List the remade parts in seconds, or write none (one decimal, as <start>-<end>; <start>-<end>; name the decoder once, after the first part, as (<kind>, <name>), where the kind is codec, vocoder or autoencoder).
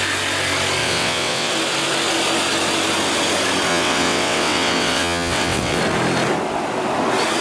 0.8-1.5 (vocoder, WaveNeXt); 3.7-5.8